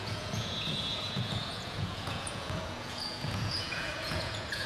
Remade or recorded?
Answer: remade